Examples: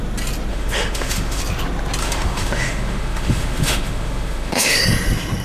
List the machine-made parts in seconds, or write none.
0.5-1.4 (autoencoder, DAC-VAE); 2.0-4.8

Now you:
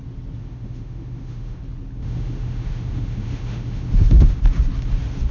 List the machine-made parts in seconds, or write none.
0.4-1.6 (autoencoder, DAC-VAE); 2.0-4.4

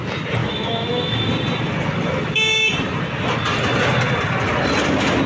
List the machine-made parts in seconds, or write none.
0.4-1.3 (autoencoder, DAC-VAE)

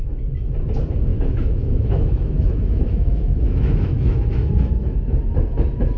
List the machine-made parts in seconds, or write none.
1.1-4.7 (autoencoder, DAC-VAE)

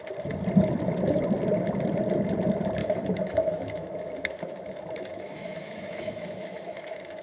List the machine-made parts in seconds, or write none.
2.8-7.2 (autoencoder, DAC-VAE)

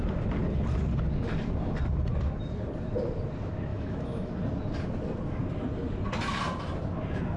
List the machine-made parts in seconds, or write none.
3.7-4.3 (autoencoder, DAC-VAE)